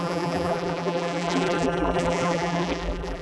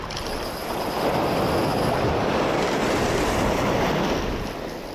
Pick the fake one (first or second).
first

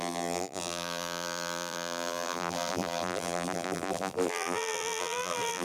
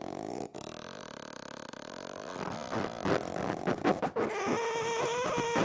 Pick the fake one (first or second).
first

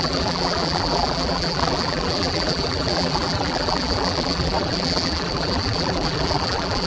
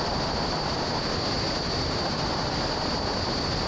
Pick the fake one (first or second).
first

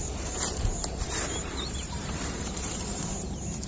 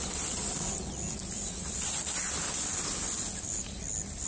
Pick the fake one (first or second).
first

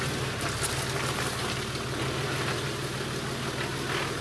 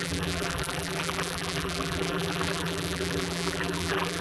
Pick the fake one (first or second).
second